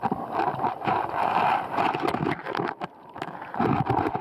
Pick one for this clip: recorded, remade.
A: recorded